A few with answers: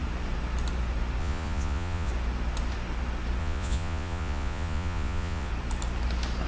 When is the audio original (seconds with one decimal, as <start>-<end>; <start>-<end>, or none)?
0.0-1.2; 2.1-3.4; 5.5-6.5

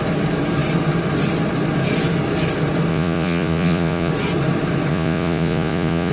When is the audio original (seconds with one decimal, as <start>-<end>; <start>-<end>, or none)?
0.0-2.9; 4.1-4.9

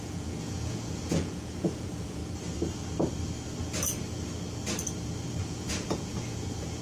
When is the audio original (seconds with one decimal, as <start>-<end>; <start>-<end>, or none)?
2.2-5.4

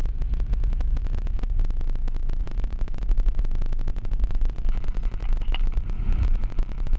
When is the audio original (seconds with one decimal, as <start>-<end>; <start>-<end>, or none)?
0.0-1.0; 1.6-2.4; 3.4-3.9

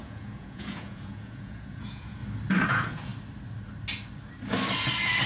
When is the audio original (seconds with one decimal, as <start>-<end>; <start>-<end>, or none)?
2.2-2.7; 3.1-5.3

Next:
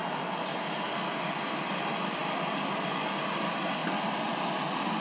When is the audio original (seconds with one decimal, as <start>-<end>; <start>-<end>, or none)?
0.0-5.0

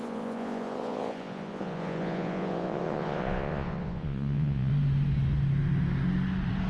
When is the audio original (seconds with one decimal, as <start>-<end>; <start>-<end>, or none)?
4.7-6.7

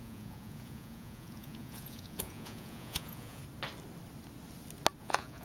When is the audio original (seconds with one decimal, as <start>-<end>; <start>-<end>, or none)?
3.4-5.0